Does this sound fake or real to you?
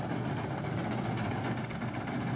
real